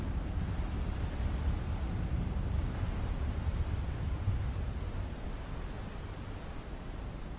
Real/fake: real